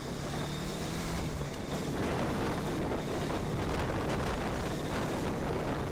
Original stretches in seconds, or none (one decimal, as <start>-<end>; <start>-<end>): 0.0-0.7; 2.3-5.9